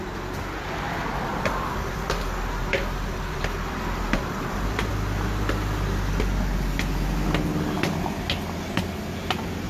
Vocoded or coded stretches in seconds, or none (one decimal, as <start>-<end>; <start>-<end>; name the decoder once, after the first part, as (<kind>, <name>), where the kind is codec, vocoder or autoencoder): 1.3-4.9 (vocoder, BigVGAN v2)